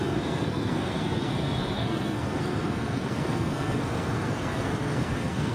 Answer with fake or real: fake